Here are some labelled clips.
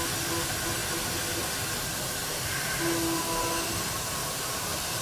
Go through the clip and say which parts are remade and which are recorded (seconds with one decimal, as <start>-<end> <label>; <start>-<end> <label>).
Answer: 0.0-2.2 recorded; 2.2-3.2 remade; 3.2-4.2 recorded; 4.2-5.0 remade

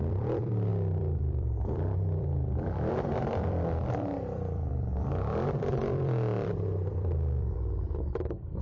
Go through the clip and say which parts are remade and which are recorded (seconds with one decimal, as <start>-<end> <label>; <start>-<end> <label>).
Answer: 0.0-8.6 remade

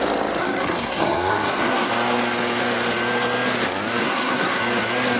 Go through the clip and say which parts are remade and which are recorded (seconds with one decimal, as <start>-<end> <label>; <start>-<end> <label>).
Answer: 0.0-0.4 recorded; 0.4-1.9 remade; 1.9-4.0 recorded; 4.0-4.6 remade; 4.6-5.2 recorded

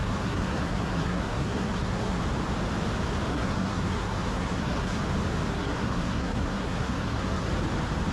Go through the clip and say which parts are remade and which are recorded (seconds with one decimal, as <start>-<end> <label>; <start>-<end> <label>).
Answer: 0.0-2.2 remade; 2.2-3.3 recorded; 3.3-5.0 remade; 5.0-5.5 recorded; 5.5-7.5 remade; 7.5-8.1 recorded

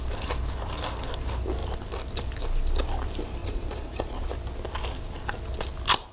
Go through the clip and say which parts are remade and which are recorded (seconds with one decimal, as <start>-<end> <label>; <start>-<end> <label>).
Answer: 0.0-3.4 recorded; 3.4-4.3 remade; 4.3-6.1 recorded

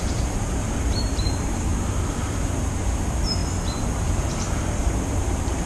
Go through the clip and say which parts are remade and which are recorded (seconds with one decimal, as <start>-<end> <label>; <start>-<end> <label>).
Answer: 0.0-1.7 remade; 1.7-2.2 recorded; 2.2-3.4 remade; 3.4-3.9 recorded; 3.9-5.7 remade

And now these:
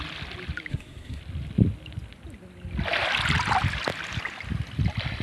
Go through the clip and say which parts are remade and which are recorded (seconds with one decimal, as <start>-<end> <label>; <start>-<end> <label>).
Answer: 0.0-0.7 recorded; 0.7-1.2 remade; 1.2-5.2 recorded

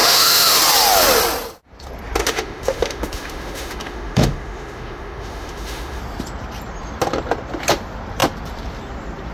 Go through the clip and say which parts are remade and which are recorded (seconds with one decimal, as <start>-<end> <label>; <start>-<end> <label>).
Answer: 0.0-0.6 remade; 0.6-2.2 recorded; 2.2-6.0 remade; 6.0-9.3 recorded